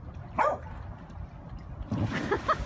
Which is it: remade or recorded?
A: recorded